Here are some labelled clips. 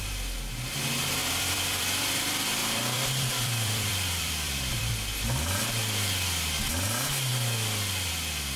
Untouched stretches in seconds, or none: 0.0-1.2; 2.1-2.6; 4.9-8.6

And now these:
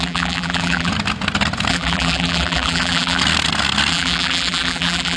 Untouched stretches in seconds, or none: 0.9-1.7; 3.2-3.9

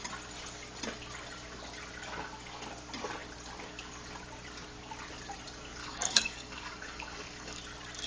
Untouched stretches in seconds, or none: 0.0-5.8; 7.6-8.1

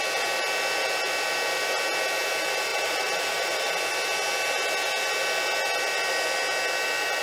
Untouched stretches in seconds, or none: 0.0-2.7; 3.7-7.2

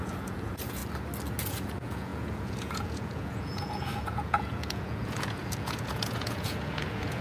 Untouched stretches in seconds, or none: 0.8-1.4

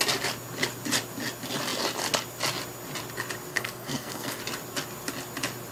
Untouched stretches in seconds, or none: 0.0-3.5; 4.4-5.7

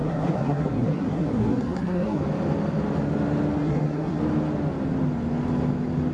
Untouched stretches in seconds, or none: 2.2-3.6; 4.2-6.1

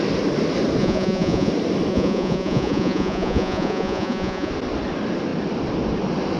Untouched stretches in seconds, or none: 0.0-0.8; 1.5-1.9; 4.5-6.4